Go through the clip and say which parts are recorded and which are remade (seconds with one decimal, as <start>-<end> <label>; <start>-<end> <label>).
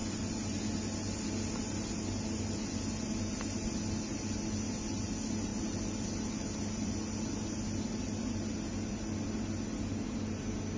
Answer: 0.0-10.8 recorded